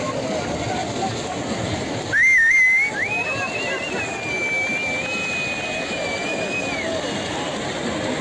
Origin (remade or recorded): recorded